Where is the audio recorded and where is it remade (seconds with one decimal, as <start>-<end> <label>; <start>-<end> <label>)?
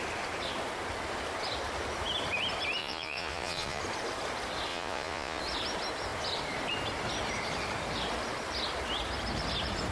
0.0-2.8 recorded; 2.8-3.8 remade; 3.8-4.7 recorded; 4.7-5.4 remade; 5.4-9.9 recorded